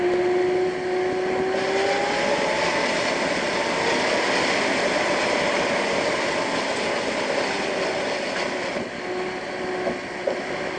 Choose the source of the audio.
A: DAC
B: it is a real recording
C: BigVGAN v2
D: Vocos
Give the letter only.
B